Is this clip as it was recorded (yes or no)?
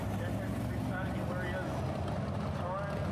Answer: yes